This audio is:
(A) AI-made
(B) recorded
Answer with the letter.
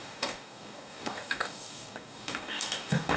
A